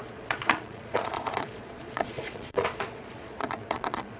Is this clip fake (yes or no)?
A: yes